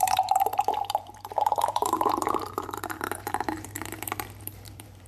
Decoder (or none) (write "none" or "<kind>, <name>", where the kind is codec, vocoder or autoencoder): vocoder, BigVGAN v2